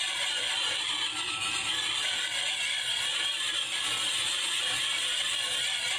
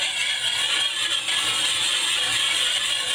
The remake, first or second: first